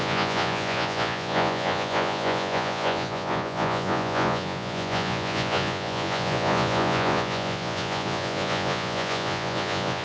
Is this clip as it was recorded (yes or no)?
no